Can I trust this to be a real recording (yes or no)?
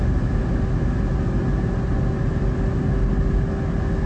yes